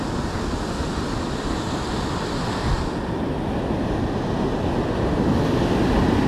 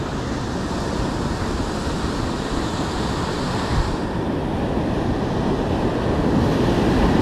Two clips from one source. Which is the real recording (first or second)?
first